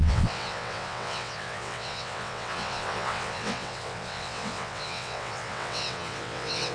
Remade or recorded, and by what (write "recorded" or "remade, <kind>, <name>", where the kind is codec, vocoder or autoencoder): remade, vocoder, WaveNeXt